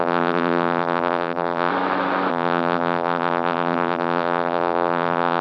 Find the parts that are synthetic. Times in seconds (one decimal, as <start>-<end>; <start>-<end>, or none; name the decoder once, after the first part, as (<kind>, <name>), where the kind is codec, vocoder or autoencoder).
0.0-1.7 (vocoder, BigVGAN v2); 2.3-5.4